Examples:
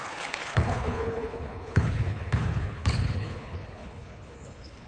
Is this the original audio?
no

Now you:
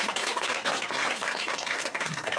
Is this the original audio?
no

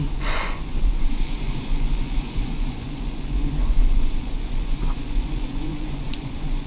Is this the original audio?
no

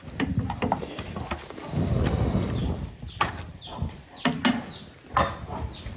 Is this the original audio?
yes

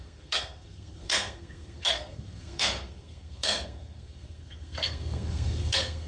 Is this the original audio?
no